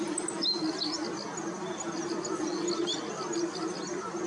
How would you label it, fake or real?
real